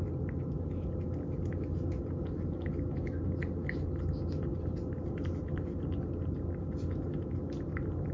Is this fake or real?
real